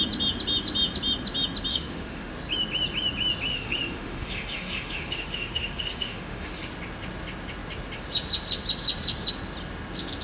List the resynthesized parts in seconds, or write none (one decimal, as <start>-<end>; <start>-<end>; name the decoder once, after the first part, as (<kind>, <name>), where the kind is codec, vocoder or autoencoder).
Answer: 1.7-2.3 (autoencoder, DAC-VAE); 3.5-6.6